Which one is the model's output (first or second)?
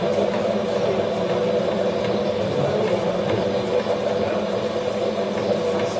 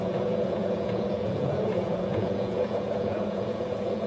second